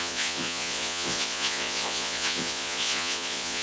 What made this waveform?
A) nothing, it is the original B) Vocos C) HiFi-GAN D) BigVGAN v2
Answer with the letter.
B